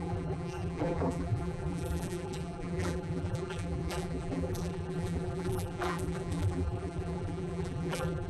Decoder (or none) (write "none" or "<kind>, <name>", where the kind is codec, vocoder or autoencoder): vocoder, BigVGAN v2